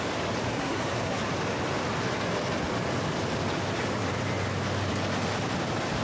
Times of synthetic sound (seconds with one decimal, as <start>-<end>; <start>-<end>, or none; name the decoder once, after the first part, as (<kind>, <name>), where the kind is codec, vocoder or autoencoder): 0.5-1.2 (codec, SNAC)